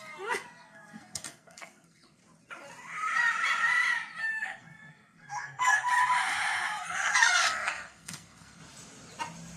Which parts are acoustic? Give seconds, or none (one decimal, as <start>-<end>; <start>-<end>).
2.2-4.3; 5.9-6.8; 8.6-9.6